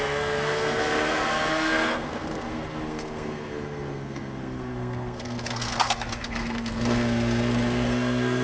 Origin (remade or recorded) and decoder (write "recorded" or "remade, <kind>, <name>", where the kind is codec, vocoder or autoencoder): remade, codec, SNAC